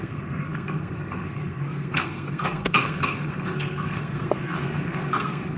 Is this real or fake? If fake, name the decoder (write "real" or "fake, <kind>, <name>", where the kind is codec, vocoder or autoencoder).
fake, codec, SNAC